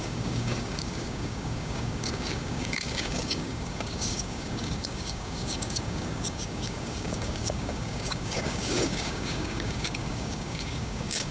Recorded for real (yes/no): no